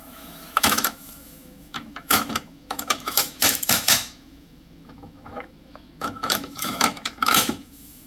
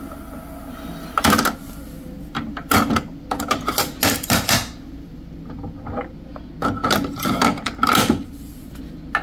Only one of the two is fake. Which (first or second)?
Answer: first